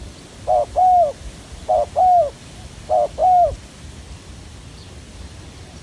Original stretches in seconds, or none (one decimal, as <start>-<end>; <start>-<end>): 0.0-5.8